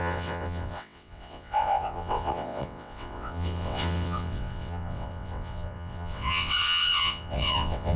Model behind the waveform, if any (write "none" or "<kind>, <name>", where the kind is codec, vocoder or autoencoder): vocoder, WaveNeXt